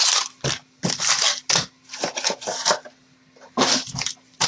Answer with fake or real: real